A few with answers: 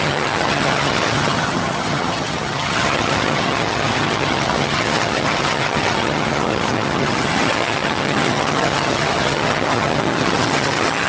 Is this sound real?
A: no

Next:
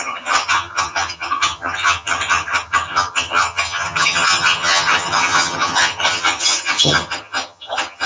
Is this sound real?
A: no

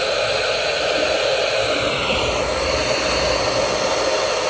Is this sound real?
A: yes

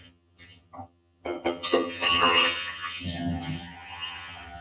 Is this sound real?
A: no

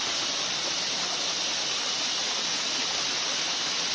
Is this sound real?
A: yes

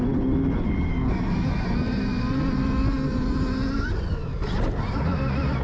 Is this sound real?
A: yes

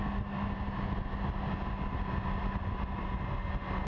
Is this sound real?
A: yes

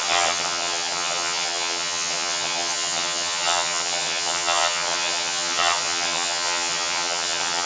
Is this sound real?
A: no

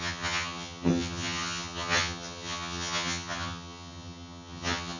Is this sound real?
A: no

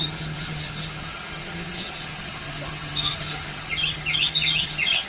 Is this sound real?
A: no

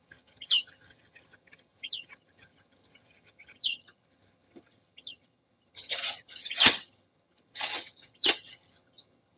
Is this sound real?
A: no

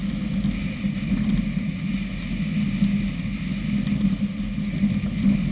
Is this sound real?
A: yes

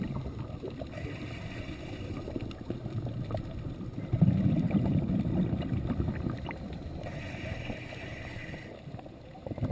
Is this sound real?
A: yes